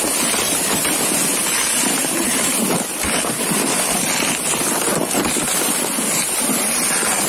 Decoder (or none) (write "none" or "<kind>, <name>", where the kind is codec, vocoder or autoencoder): none